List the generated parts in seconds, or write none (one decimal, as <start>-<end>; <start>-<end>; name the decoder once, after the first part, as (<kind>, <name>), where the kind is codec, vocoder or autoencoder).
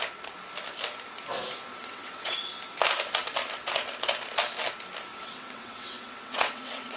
1.7-2.5 (vocoder, WaveNeXt); 5.1-7.0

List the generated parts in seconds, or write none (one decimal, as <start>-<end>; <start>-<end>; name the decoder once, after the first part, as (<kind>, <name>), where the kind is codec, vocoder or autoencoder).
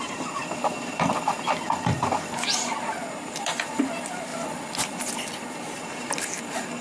0.0-0.4 (vocoder, BigVGAN v2); 3.1-4.3; 5.0-6.8